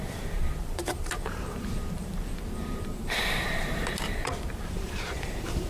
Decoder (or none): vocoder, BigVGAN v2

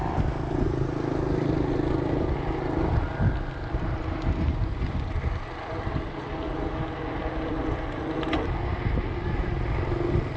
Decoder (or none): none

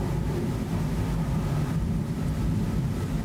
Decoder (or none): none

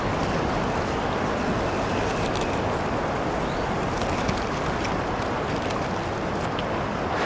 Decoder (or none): none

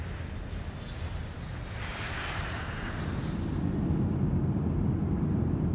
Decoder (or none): none